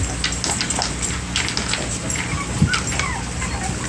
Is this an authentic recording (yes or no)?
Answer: yes